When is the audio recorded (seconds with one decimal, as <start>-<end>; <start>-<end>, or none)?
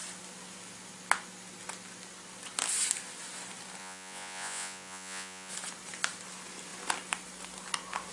0.0-3.8; 5.5-8.1